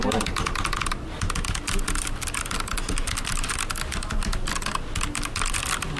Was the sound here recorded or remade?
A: recorded